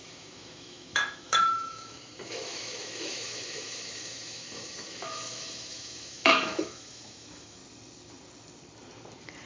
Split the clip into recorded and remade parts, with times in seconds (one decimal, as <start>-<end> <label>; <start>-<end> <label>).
0.0-7.6 remade; 7.6-9.5 recorded